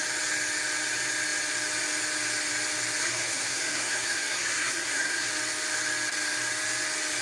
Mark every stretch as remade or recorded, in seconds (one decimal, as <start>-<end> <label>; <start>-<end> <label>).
0.0-3.0 recorded; 3.0-5.3 remade; 5.3-7.2 recorded

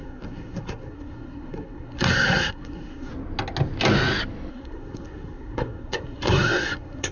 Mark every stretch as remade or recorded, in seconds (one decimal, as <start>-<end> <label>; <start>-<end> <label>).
0.0-3.1 remade; 3.1-4.5 recorded; 4.5-7.1 remade

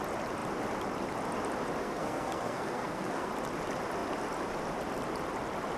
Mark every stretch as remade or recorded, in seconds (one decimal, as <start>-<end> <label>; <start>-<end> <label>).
0.0-1.8 recorded; 1.8-3.3 remade; 3.3-5.8 recorded

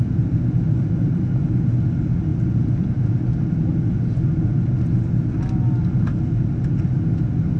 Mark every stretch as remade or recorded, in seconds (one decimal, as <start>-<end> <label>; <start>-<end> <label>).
0.0-7.6 recorded

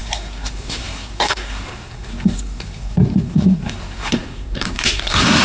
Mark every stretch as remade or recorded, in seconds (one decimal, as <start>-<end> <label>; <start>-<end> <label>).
0.0-5.4 remade